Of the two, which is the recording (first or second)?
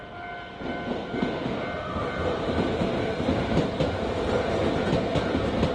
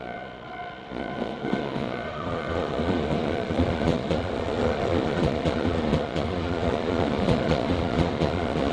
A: first